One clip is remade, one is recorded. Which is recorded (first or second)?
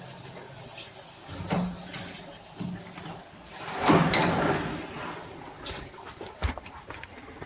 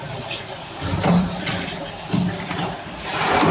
first